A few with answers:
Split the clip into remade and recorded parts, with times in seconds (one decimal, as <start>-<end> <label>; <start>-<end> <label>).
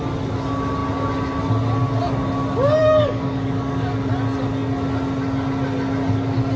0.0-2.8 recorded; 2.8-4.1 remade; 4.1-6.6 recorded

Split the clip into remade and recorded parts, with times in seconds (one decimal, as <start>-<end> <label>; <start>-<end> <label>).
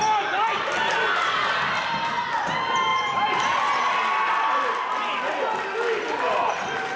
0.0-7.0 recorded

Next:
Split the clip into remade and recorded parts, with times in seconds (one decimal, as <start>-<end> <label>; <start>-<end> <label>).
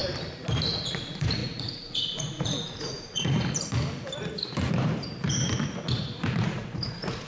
0.0-0.7 recorded; 0.7-3.4 remade; 3.4-6.4 recorded; 6.4-7.3 remade